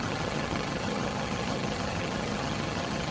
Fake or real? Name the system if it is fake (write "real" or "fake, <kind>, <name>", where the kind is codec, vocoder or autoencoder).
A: fake, vocoder, HiFi-GAN